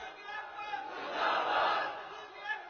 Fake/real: fake